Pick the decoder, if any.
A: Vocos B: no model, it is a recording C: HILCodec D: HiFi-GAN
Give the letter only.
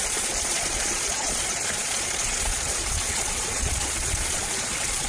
A